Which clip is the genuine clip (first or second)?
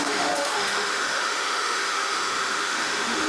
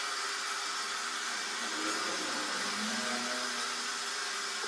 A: second